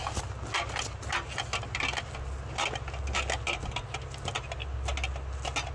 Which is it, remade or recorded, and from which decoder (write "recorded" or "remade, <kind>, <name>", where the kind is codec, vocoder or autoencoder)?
recorded